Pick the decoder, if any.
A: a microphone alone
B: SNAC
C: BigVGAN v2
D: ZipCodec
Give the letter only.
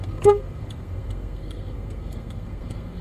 B